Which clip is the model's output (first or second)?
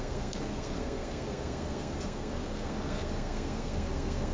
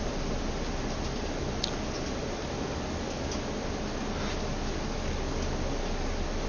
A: first